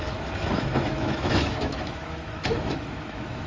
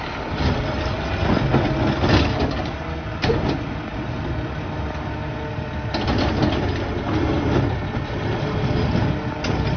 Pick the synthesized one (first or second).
first